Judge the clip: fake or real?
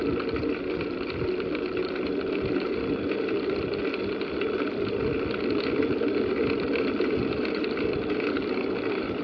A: real